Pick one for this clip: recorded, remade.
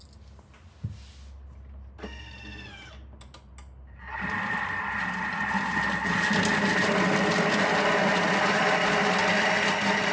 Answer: recorded